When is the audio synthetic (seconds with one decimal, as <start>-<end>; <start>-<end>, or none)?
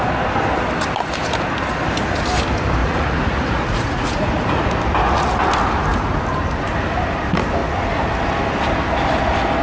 2.8-4.7